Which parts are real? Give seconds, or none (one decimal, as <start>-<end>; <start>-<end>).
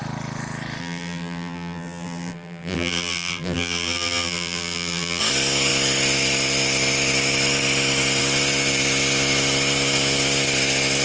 0.0-0.8; 5.2-11.0